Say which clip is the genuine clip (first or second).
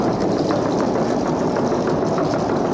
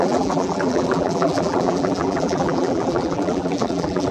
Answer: first